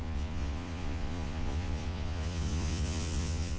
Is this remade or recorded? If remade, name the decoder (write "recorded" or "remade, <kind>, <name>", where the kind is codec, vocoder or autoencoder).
remade, vocoder, Vocos